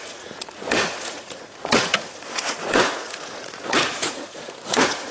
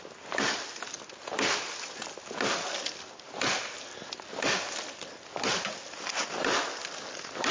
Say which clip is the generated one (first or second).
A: first